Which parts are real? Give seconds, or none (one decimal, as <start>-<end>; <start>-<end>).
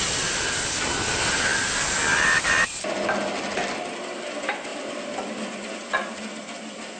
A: 0.0-7.0